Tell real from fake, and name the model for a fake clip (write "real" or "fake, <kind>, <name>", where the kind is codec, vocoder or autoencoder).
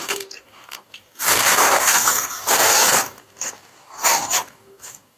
fake, codec, DAC